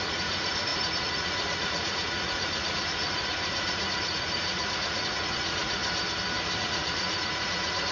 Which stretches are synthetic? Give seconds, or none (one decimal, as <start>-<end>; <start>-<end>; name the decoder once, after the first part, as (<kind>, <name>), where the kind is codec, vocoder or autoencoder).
0.0-5.8 (vocoder, Vocos); 6.6-7.9

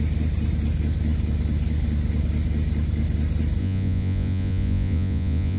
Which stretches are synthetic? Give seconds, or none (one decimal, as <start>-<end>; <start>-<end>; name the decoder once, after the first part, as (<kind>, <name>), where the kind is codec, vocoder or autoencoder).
3.6-5.6 (vocoder, Vocos)